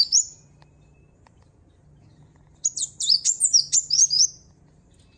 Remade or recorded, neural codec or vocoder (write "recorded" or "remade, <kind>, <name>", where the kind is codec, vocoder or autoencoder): recorded